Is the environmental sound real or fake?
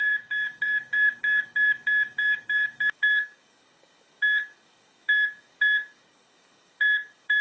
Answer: fake